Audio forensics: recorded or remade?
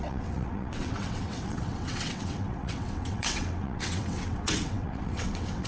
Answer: remade